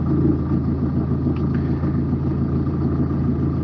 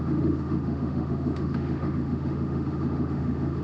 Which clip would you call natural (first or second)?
first